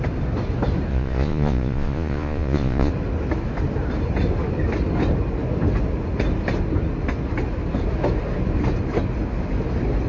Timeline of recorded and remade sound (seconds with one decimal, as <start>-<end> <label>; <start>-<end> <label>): 0.0-0.9 recorded; 0.9-2.9 remade; 2.9-10.1 recorded